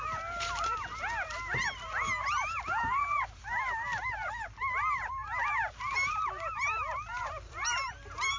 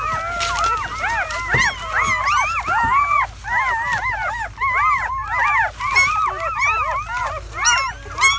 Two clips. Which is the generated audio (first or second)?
first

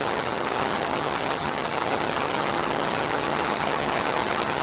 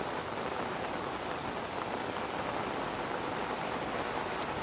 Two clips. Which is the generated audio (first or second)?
first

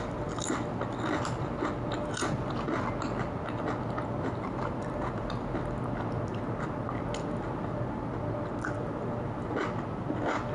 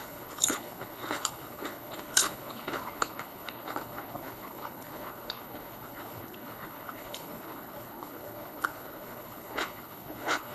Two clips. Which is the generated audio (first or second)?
second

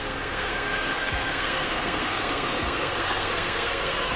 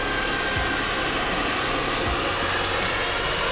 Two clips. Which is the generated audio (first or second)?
first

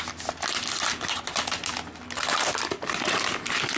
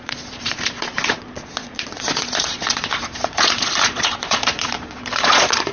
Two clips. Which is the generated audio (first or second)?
second